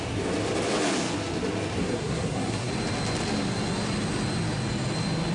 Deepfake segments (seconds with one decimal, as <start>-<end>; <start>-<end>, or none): 1.8-2.7